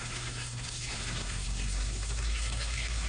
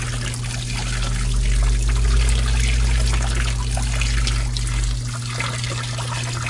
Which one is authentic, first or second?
second